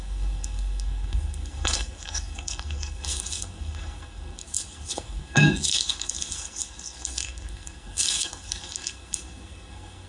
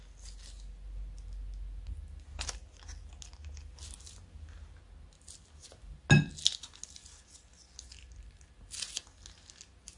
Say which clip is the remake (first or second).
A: first